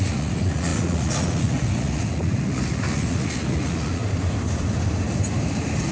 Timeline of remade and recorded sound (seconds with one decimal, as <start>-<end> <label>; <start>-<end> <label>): 0.0-4.0 remade; 4.0-5.9 recorded